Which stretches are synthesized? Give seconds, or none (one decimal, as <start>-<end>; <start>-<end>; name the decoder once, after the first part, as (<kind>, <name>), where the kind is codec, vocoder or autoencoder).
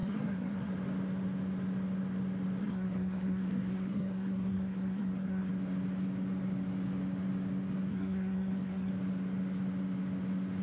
0.0-0.7 (codec, SNAC); 2.6-5.5; 7.9-8.9